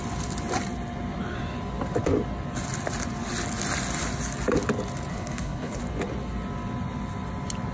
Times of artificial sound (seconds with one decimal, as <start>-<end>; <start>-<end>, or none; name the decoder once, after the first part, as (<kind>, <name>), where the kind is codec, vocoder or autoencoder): 5.1-5.8 (codec, HILCodec)